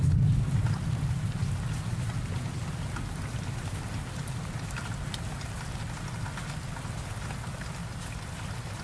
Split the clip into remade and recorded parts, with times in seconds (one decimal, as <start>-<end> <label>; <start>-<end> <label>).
0.0-8.8 recorded